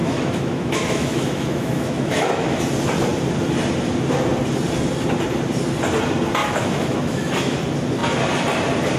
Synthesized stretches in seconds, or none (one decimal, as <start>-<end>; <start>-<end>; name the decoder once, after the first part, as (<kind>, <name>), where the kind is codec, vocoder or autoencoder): 0.0-2.6 (autoencoder, DAC-VAE); 6.4-7.6